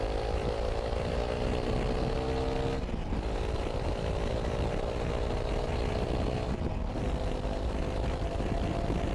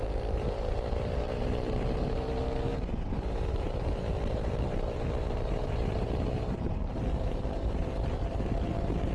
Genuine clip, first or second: first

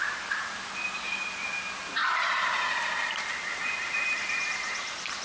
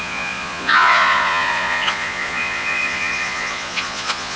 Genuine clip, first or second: first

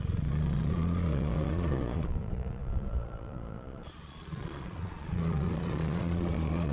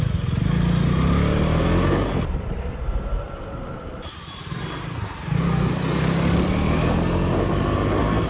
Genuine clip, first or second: second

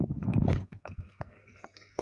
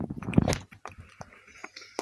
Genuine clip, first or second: second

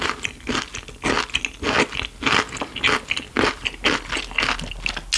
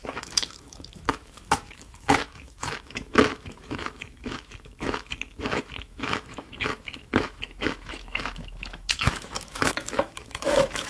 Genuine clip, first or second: first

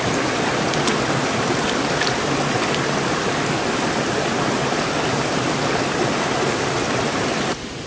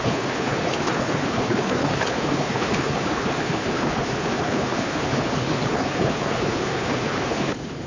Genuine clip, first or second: first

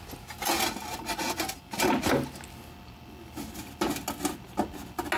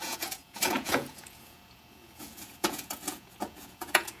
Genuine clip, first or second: first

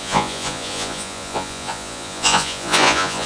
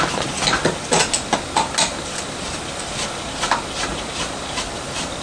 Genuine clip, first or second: second